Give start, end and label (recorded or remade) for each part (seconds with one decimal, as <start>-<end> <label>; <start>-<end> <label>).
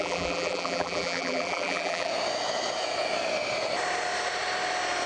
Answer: 0.0-2.1 remade; 2.1-5.1 recorded